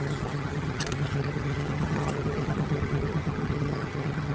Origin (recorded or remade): remade